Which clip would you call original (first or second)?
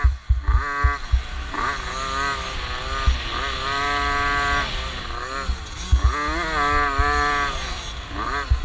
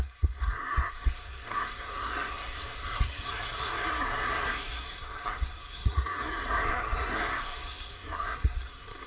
first